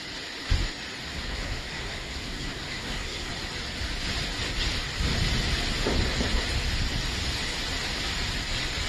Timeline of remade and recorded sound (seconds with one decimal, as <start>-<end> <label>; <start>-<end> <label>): 0.0-1.1 recorded; 1.1-3.3 remade; 3.3-8.9 recorded